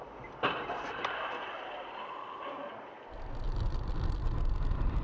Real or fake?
real